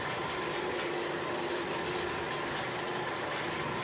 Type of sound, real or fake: real